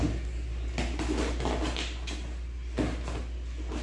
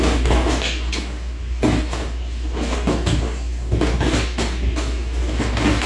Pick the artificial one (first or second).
second